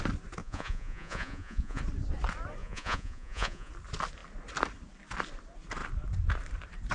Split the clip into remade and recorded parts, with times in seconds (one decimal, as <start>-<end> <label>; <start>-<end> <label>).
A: 0.0-0.4 recorded; 0.4-1.8 remade; 1.8-2.6 recorded; 2.6-3.7 remade; 3.7-6.9 recorded